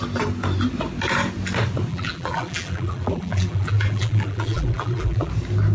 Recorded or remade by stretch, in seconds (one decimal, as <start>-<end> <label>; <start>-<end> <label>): 0.0-1.9 recorded; 1.9-5.3 remade; 5.3-5.7 recorded